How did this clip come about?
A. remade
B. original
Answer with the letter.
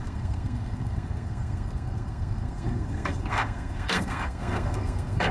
A